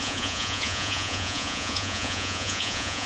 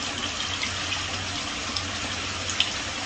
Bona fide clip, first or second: second